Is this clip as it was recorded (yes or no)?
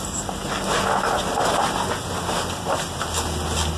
yes